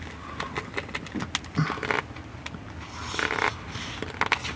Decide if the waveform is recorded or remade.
recorded